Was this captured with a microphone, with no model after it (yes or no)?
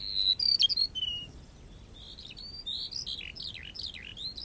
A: yes